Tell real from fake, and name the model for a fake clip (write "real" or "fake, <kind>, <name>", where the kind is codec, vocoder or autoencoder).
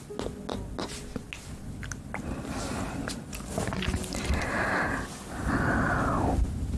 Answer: real